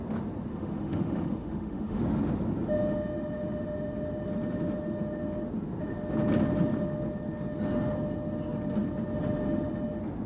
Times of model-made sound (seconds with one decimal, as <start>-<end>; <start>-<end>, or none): 0.5-2.0